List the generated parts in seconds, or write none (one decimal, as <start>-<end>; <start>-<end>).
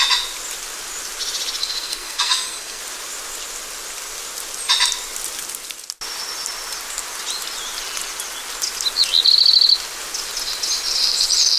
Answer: 1.6-2.8